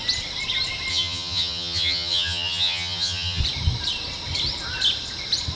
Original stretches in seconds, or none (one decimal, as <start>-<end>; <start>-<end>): 0.0-0.9; 3.4-5.6